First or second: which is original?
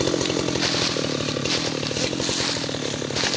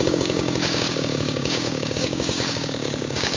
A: first